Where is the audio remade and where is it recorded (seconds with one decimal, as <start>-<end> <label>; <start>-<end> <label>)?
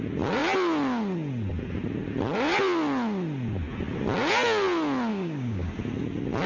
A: 0.0-5.1 recorded; 5.1-5.7 remade; 5.7-6.5 recorded